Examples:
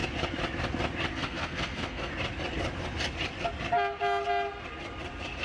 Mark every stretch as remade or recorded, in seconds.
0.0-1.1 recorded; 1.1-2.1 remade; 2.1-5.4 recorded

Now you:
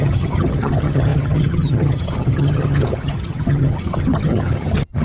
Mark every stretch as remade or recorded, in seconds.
0.0-5.0 remade